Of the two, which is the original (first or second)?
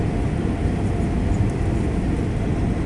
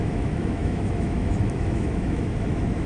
first